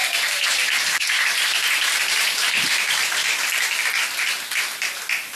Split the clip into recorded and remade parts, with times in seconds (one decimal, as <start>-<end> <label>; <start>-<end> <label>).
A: 0.0-3.2 remade; 3.2-5.4 recorded